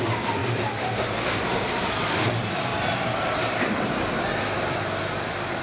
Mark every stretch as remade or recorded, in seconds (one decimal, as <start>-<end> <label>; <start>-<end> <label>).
0.0-0.4 recorded; 0.4-1.9 remade; 1.9-2.7 recorded; 2.7-4.2 remade; 4.2-5.6 recorded

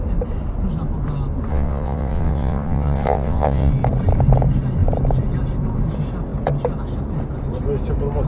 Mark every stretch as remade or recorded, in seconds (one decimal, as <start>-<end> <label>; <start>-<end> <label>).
0.0-1.5 recorded; 1.5-3.7 remade; 3.7-8.3 recorded

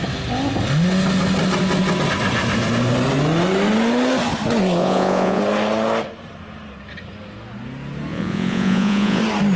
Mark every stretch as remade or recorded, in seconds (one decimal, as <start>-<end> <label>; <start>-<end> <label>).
0.0-4.8 recorded; 4.8-5.4 remade; 5.4-8.1 recorded; 8.1-9.2 remade; 9.2-9.6 recorded

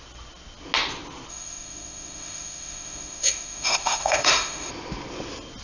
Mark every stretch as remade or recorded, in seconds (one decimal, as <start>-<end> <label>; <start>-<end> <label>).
0.0-1.3 recorded; 1.3-4.7 remade; 4.7-5.6 recorded

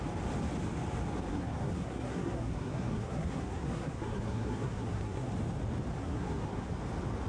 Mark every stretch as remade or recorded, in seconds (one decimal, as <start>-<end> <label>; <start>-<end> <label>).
0.0-1.3 recorded; 1.3-5.3 remade; 5.3-6.0 recorded; 6.0-6.7 remade; 6.7-7.3 recorded

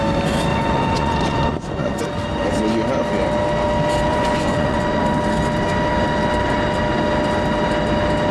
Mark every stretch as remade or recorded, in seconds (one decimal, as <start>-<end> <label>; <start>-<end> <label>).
0.0-0.5 recorded; 0.5-2.0 remade; 2.0-4.1 recorded; 4.1-5.0 remade; 5.0-8.3 recorded

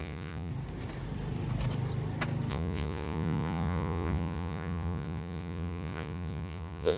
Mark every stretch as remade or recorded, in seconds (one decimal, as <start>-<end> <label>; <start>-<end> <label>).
0.0-0.5 remade; 0.5-2.5 recorded; 2.5-7.0 remade

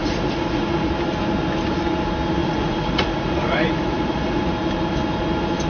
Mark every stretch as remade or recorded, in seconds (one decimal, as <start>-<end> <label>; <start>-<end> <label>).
0.0-0.9 remade; 0.9-2.4 recorded; 2.4-4.4 remade; 4.4-5.7 recorded